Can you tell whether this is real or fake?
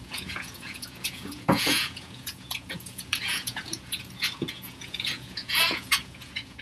fake